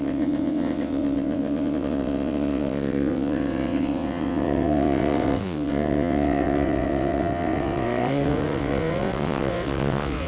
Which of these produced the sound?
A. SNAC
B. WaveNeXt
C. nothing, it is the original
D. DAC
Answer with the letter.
B